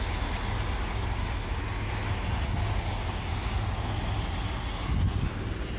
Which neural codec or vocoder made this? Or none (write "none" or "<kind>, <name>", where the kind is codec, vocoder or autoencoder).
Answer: none